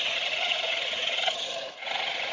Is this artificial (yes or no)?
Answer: yes